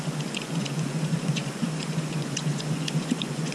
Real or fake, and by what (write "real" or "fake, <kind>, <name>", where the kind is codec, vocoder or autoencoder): fake, vocoder, Vocos